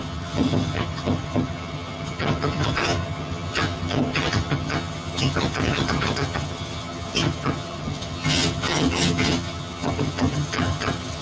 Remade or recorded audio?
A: remade